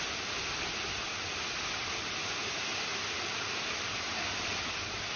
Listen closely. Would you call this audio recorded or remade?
recorded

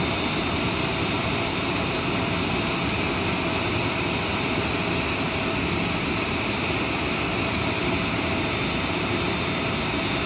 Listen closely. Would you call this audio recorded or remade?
recorded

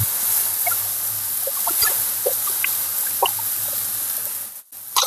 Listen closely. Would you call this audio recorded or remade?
recorded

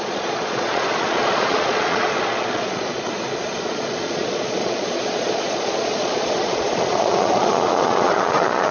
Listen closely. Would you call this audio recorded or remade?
remade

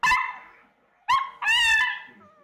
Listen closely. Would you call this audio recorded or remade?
recorded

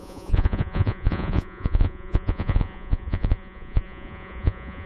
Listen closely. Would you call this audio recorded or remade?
remade